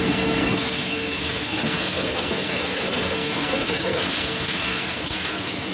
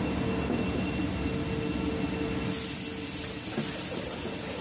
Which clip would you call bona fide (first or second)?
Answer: second